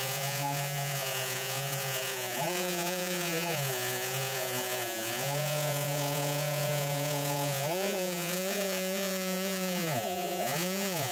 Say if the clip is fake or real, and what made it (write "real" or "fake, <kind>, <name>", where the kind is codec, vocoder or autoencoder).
fake, vocoder, Vocos